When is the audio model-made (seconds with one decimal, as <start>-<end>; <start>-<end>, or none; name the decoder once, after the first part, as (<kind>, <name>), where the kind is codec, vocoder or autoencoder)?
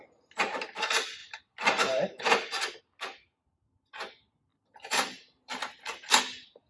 1.2-2.8 (vocoder, BigVGAN v2); 4.5-5.6